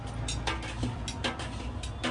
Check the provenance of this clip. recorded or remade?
recorded